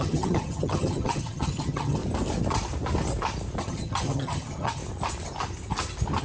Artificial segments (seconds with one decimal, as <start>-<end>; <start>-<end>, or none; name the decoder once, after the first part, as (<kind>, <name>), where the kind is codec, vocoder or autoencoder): 0.0-2.0 (vocoder, HiFi-GAN); 3.6-4.8